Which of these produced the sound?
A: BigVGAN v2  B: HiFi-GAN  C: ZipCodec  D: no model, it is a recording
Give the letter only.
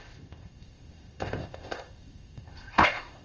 C